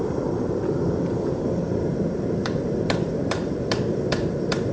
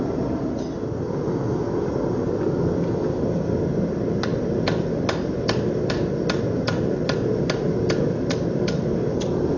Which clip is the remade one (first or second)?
first